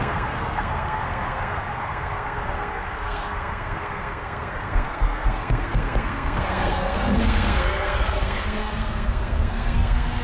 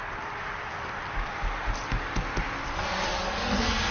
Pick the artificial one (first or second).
first